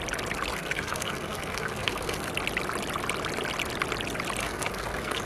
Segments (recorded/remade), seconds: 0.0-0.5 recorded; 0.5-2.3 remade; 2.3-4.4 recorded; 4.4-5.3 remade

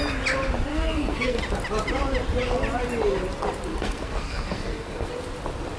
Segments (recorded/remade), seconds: 0.0-0.7 recorded; 0.7-1.4 remade; 1.4-3.7 recorded; 3.7-5.1 remade; 5.1-5.8 recorded

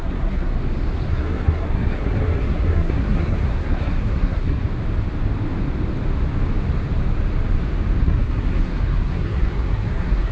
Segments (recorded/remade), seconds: 0.0-0.5 remade; 0.5-1.1 recorded; 1.1-4.6 remade; 4.6-8.0 recorded; 8.0-10.3 remade

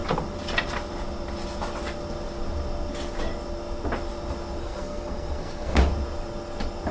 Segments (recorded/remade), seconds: 0.0-4.6 recorded; 4.6-5.8 remade; 5.8-6.9 recorded

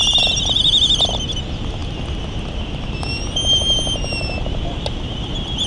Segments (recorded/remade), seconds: 0.0-5.7 recorded